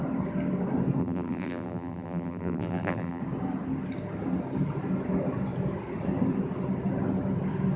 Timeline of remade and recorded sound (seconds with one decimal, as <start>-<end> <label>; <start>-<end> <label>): 0.0-1.0 recorded; 1.0-3.2 remade; 3.2-7.8 recorded